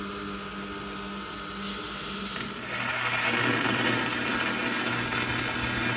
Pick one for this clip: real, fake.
real